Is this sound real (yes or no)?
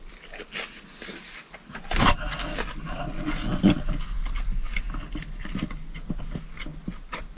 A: yes